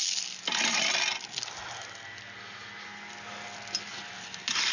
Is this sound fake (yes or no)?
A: no